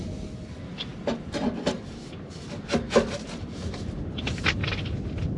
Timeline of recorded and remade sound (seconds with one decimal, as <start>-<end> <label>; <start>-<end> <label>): 0.0-5.4 recorded